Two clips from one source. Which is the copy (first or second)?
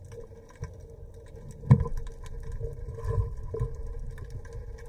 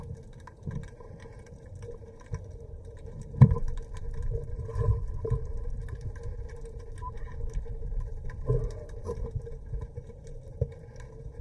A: second